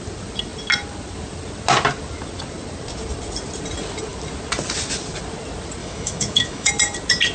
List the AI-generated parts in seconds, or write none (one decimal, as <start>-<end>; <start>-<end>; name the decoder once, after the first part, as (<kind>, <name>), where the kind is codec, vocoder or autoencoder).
5.8-6.7 (autoencoder, DAC-VAE)